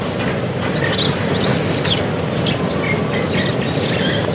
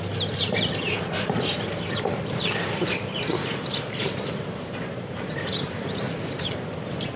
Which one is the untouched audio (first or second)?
first